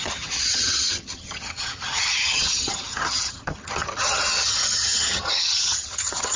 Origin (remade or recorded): remade